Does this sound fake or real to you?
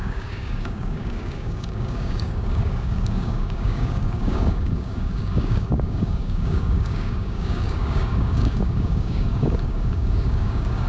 fake